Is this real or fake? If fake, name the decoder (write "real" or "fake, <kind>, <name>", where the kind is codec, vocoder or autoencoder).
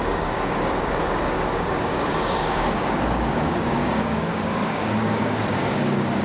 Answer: fake, codec, DAC